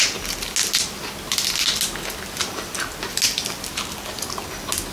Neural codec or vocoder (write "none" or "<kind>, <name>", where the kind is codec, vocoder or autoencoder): none